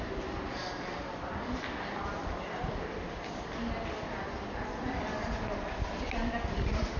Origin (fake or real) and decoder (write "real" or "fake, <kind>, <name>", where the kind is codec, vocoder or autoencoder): real